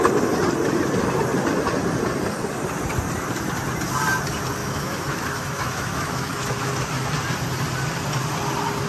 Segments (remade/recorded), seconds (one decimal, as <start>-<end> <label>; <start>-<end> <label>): 0.0-4.6 recorded; 4.6-6.7 remade; 6.7-8.9 recorded